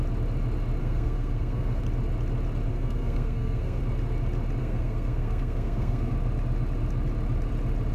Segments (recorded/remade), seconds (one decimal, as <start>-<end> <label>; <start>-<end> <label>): 0.0-0.8 recorded; 0.8-1.8 remade; 1.8-2.7 recorded; 2.7-3.8 remade; 3.8-4.6 recorded; 4.6-6.1 remade; 6.1-7.9 recorded